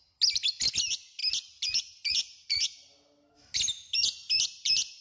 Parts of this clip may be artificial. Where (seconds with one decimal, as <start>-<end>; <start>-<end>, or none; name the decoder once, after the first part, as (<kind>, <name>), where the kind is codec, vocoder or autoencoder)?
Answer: none